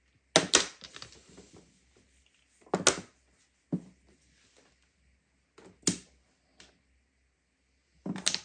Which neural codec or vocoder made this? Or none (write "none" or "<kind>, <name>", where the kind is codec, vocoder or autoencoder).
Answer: none